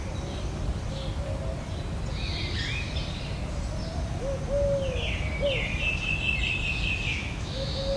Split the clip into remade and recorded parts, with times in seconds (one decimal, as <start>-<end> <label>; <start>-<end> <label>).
0.0-7.1 recorded; 7.1-8.0 remade